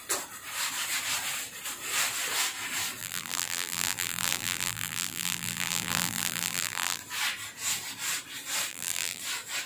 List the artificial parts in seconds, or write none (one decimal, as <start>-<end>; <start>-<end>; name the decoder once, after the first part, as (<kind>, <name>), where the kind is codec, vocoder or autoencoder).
3.0-7.0 (vocoder, BigVGAN v2); 8.7-9.2